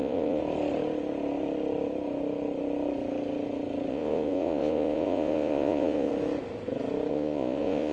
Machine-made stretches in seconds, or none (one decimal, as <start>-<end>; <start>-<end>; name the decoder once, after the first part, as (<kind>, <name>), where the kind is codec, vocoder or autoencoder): 0.0-0.4 (vocoder, Vocos); 3.9-6.1; 7.1-7.9